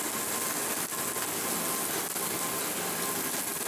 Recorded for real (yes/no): yes